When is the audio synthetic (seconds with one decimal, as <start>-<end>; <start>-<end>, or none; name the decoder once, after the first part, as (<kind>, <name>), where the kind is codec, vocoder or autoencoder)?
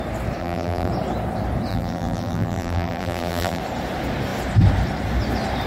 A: 0.4-0.9 (vocoder, BigVGAN v2); 1.7-3.6